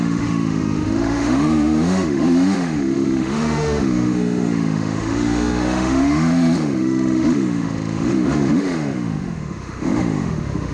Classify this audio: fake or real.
fake